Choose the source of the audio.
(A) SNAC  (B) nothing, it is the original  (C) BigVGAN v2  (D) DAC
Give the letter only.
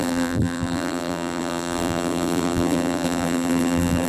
C